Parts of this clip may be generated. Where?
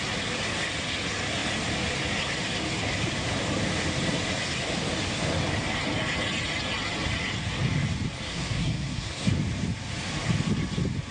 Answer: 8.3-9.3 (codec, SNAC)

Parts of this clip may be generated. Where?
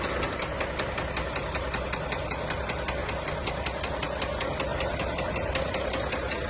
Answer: 3.0-3.8 (vocoder, BigVGAN v2); 4.7-5.3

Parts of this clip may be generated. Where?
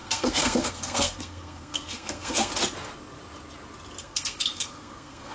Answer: 0.0-2.5 (codec, SNAC); 4.0-5.3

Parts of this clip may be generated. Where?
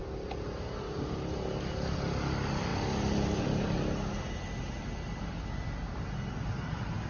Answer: none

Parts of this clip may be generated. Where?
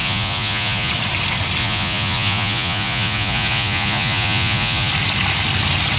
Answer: 0.0-0.9 (vocoder, Vocos); 1.6-4.9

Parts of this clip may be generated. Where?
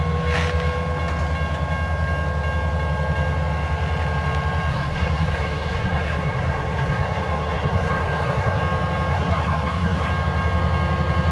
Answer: 4.7-8.6 (codec, SNAC); 9.1-10.1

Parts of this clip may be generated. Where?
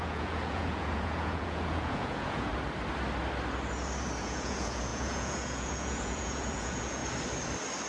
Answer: 0.0-2.5 (vocoder, Vocos); 4.2-7.0